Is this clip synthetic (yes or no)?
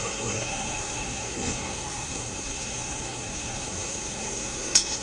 yes